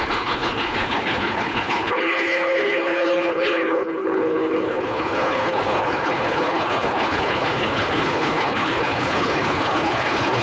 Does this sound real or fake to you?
fake